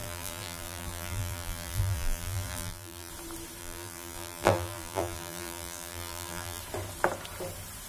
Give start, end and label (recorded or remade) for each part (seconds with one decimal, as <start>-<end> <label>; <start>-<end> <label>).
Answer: 0.0-3.1 remade; 3.1-3.6 recorded; 3.6-6.6 remade; 6.6-7.9 recorded